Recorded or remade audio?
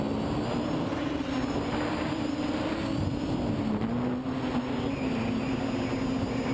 recorded